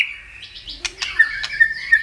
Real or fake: real